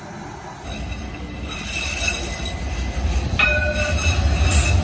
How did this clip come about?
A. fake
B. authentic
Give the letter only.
B